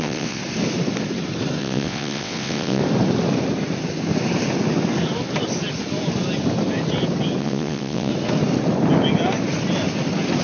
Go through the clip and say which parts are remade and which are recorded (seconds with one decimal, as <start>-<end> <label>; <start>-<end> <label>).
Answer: 0.0-0.4 remade; 0.4-1.6 recorded; 1.6-2.8 remade; 2.8-7.4 recorded; 7.4-8.1 remade; 8.1-10.4 recorded